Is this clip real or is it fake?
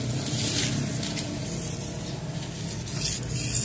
real